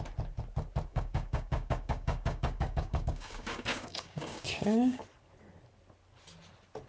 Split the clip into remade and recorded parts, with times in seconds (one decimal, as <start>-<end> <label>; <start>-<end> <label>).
0.0-0.9 recorded; 0.9-5.0 remade; 5.0-6.9 recorded